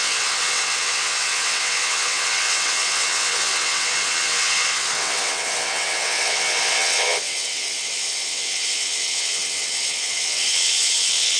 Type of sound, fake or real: fake